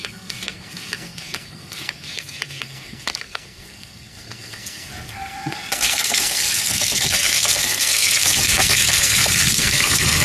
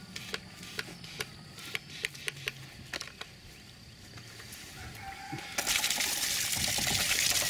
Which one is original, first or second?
second